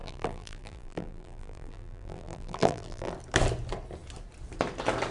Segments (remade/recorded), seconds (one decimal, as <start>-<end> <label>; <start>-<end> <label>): 0.0-3.1 remade; 3.1-5.1 recorded